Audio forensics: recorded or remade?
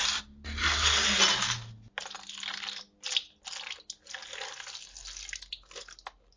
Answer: recorded